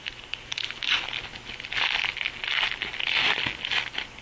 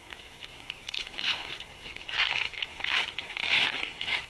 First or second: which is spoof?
second